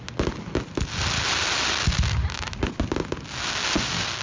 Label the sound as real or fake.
real